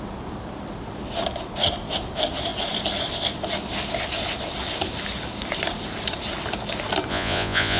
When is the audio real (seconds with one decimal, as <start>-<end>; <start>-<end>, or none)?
0.0-7.1